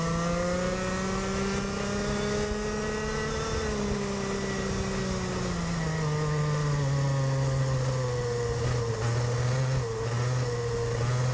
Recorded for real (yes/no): yes